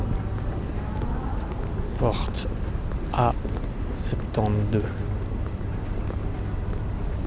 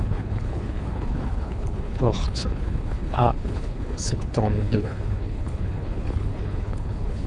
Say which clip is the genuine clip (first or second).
first